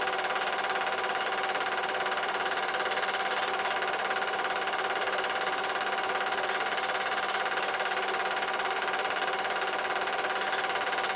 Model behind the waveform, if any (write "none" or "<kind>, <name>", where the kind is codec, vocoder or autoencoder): none